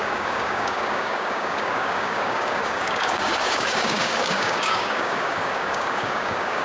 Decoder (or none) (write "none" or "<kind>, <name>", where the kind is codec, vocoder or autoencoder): codec, DAC